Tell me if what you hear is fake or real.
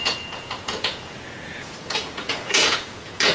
fake